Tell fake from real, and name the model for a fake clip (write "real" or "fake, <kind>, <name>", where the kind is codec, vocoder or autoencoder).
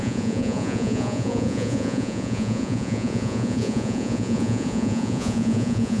fake, vocoder, Vocos